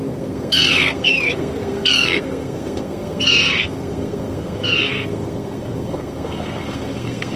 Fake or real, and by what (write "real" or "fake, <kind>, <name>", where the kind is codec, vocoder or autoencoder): fake, codec, SNAC